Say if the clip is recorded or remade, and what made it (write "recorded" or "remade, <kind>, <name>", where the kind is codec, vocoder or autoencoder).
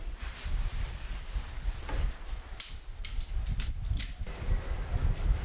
recorded